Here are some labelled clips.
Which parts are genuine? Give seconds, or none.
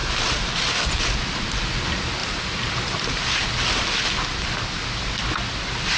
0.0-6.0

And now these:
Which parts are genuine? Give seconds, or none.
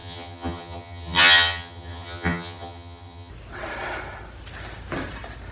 3.3-5.5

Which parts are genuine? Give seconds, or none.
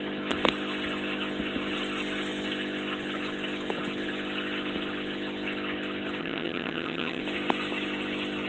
0.0-6.2; 7.2-8.5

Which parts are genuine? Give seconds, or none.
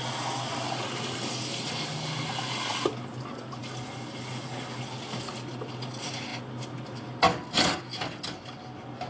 0.0-9.1